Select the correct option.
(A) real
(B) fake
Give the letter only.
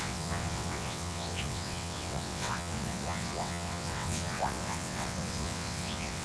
B